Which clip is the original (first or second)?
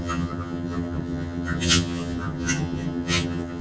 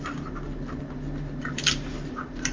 second